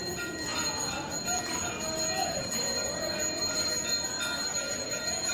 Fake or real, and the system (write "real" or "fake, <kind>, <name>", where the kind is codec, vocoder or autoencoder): real